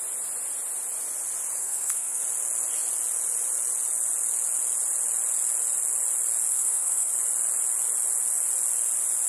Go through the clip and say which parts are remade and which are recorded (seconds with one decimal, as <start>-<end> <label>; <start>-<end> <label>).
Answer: 0.0-1.6 recorded; 1.6-2.2 remade; 2.2-6.5 recorded; 6.5-7.1 remade; 7.1-9.3 recorded